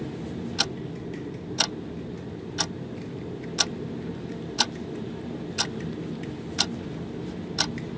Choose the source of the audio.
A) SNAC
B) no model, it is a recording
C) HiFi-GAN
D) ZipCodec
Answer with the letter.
B